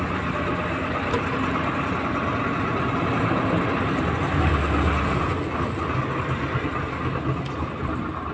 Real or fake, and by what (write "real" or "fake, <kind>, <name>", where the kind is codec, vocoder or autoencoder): real